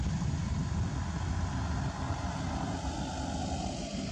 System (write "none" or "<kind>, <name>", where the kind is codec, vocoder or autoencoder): none